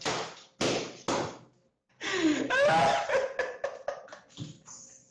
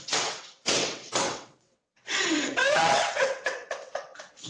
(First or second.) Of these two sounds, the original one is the first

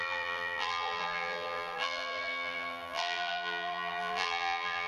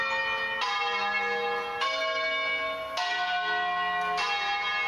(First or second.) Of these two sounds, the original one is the second